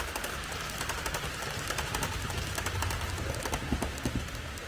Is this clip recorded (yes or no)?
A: yes